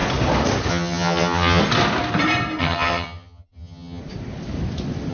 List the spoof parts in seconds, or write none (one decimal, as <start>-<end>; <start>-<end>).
0.7-1.6; 2.6-4.0